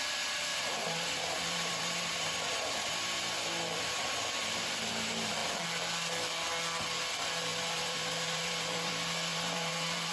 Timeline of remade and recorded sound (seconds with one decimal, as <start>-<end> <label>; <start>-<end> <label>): 0.0-0.5 recorded; 0.5-2.9 remade; 2.9-7.5 recorded; 7.5-8.9 remade; 8.9-9.3 recorded; 9.3-10.1 remade